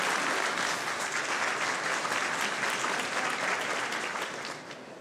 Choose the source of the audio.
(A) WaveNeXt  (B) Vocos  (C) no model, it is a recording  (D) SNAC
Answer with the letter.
C